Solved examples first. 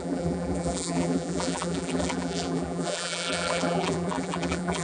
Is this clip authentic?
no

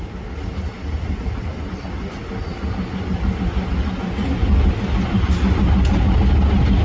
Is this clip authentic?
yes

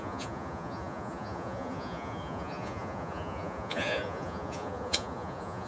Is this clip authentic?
no